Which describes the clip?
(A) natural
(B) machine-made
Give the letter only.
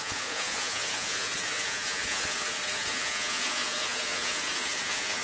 B